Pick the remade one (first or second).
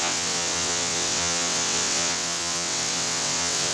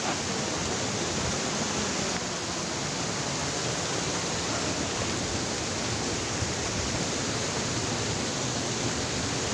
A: first